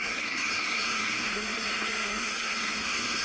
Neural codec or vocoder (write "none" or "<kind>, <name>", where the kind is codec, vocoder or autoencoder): codec, SNAC